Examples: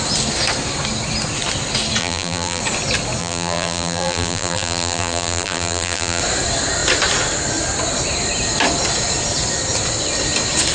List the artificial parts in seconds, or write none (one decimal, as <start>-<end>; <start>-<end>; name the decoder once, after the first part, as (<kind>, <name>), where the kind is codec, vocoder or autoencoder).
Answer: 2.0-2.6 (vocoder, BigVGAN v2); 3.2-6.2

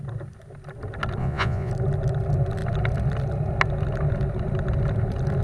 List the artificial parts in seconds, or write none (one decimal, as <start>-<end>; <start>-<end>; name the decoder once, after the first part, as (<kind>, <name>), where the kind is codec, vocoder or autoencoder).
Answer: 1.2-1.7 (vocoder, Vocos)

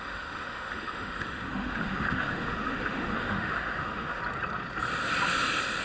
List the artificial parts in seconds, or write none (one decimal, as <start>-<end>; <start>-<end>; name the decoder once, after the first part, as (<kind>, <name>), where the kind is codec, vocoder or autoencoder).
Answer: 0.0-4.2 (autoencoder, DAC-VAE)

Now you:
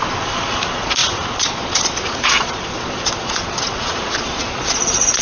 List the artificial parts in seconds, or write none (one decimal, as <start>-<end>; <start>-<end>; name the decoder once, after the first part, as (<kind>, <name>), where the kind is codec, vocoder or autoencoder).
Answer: 0.0-5.2 (vocoder, Vocos)